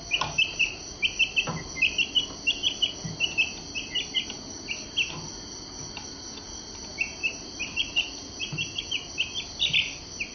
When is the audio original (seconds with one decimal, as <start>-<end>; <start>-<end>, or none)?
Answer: 0.0-7.2; 9.1-10.3